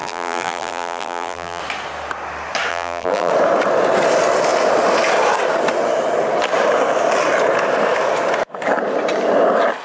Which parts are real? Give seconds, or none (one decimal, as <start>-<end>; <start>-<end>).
1.6-2.7; 3.3-9.8